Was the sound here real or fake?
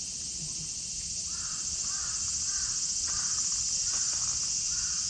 real